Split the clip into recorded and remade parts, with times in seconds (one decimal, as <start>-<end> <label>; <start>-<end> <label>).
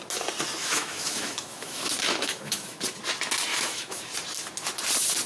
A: 0.0-0.6 recorded; 0.6-2.8 remade; 2.8-3.5 recorded; 3.5-4.0 remade; 4.0-5.3 recorded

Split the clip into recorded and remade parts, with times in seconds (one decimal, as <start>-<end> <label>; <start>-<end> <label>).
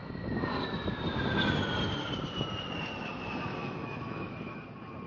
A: 0.0-3.6 recorded; 3.6-4.6 remade; 4.6-5.1 recorded